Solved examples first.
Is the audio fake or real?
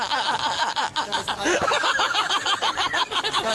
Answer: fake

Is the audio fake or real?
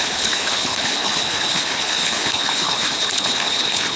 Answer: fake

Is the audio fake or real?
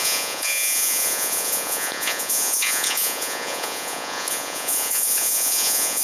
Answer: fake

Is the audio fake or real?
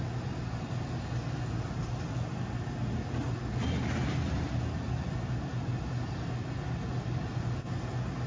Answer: real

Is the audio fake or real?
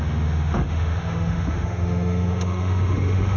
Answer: fake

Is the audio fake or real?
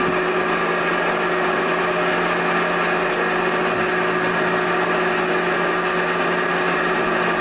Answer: real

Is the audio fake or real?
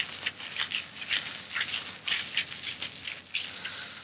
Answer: real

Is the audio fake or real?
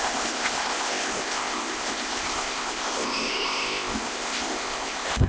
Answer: fake